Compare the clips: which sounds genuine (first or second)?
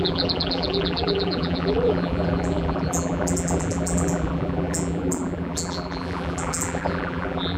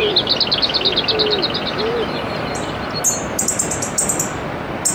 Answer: second